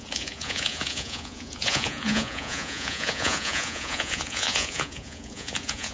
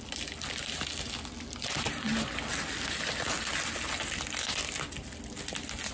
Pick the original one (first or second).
second